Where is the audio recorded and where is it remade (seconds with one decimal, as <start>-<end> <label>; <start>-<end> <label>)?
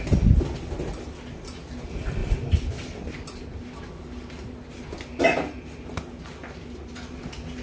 0.0-7.6 recorded